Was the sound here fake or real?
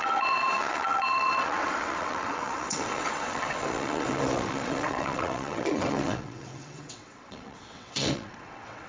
fake